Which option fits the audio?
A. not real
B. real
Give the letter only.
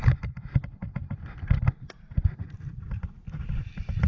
B